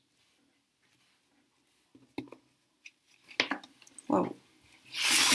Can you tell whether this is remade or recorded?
recorded